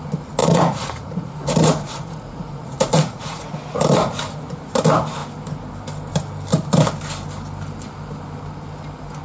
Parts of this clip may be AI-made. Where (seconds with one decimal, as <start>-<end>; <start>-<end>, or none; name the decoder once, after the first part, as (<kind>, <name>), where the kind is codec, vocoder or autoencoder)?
0.4-3.5 (vocoder, Vocos)